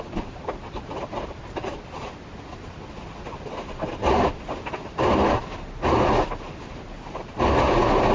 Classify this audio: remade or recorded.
recorded